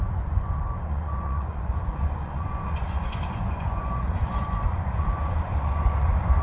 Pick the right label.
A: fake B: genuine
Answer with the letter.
A